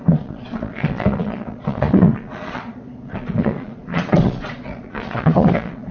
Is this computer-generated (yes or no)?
yes